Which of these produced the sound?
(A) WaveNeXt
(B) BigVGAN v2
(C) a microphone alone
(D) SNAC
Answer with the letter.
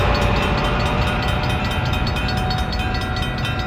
C